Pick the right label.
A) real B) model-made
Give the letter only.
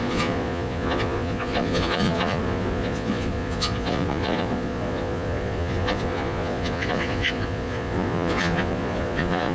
B